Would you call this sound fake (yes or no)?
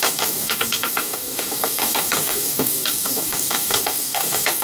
yes